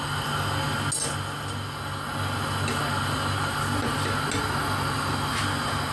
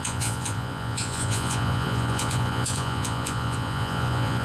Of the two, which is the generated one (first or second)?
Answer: second